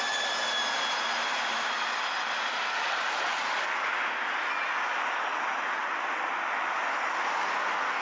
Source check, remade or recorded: recorded